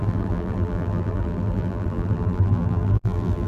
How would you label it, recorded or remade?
remade